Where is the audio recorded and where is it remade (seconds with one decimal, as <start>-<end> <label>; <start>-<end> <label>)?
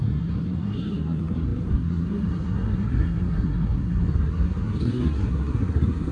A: 0.0-6.1 remade